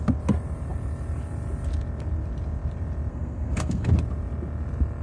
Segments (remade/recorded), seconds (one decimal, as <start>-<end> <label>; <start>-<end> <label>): 0.0-3.1 recorded; 3.1-3.9 remade; 3.9-5.0 recorded